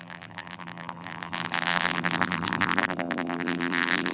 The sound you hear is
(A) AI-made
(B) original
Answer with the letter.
A